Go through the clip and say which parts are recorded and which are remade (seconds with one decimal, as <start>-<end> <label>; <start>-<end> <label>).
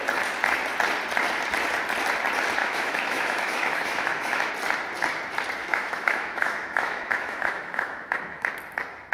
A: 0.0-2.6 recorded; 2.6-4.5 remade; 4.5-5.6 recorded; 5.6-8.5 remade; 8.5-9.1 recorded